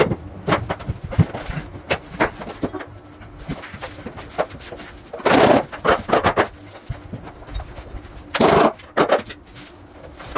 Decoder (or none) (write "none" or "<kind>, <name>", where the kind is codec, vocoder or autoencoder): none